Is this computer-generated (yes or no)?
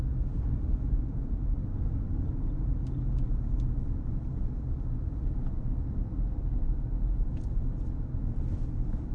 no